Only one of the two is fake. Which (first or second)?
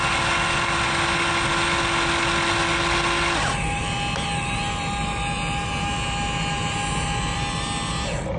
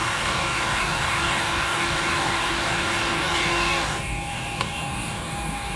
second